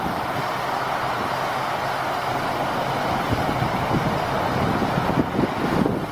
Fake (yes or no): no